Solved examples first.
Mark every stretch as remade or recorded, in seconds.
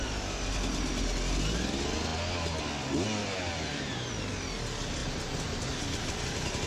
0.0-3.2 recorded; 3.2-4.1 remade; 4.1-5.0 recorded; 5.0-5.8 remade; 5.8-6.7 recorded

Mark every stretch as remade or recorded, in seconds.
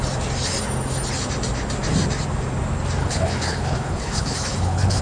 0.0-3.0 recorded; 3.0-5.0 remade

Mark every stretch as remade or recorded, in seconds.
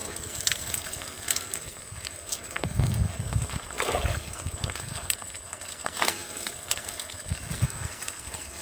0.0-8.6 remade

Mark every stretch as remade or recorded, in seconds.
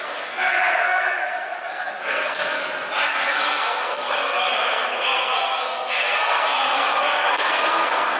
0.0-2.6 remade; 2.6-3.1 recorded; 3.1-8.2 remade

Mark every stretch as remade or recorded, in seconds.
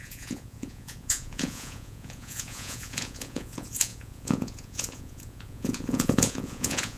0.0-7.0 remade